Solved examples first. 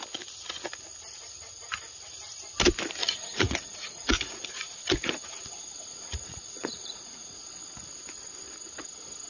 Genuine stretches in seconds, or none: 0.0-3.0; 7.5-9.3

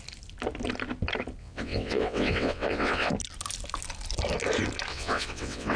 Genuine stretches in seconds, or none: 0.0-1.4; 3.1-4.9

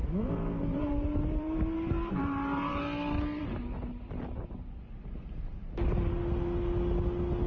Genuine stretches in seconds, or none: 2.8-3.4; 3.9-7.5

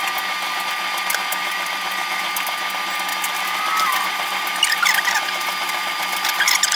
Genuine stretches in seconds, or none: 0.0-1.4; 2.3-3.1